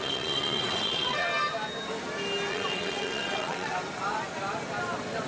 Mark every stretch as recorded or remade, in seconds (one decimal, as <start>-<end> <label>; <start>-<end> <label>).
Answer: 0.0-1.3 remade; 1.3-2.5 recorded; 2.5-3.7 remade; 3.7-5.3 recorded